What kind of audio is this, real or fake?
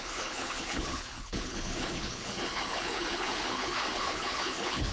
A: fake